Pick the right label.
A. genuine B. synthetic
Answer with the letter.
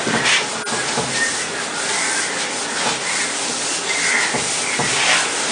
A